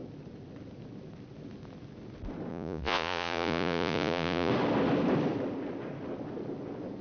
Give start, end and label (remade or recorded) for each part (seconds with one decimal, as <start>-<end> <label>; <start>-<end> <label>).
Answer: 0.0-2.5 recorded; 2.5-4.5 remade; 4.5-7.0 recorded